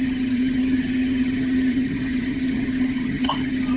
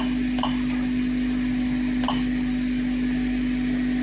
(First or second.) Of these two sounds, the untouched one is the second